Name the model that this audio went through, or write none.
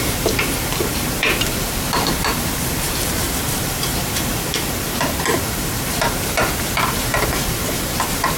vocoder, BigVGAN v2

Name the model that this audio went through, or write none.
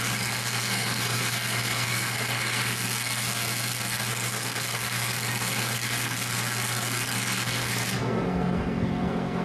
codec, SNAC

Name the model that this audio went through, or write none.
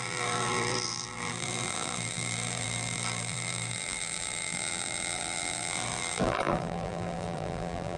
vocoder, BigVGAN v2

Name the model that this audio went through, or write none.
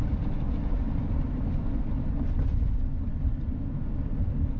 none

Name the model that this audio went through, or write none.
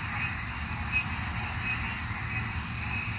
none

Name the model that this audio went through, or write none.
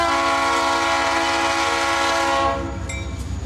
none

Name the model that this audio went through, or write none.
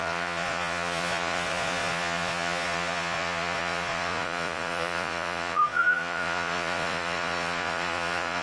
vocoder, Vocos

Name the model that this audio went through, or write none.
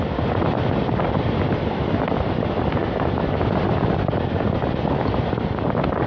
none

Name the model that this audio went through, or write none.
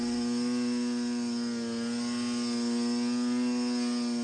none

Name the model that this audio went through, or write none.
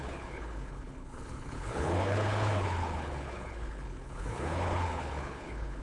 codec, HILCodec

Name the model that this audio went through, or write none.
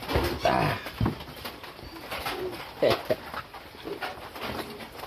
none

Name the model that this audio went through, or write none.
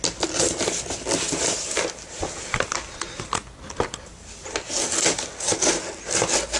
none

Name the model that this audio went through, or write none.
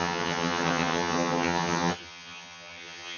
vocoder, HiFi-GAN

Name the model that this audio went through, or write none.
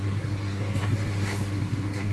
codec, SNAC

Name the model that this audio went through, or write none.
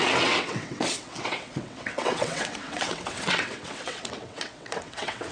vocoder, WaveNeXt